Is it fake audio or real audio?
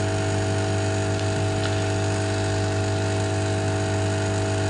real